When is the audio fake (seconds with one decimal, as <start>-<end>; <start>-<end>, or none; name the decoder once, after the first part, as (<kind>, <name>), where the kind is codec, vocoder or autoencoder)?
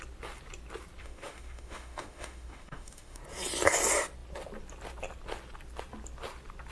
1.0-3.2 (autoencoder, DAC-VAE)